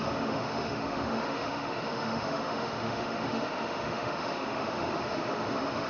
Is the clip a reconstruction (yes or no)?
yes